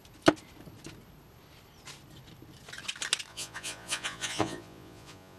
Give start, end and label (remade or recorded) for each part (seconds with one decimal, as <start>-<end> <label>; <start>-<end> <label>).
0.0-3.3 recorded; 3.3-5.4 remade